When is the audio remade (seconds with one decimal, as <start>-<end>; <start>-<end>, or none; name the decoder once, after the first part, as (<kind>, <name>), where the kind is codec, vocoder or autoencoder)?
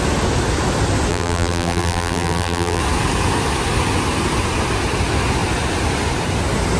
1.1-2.8 (vocoder, BigVGAN v2)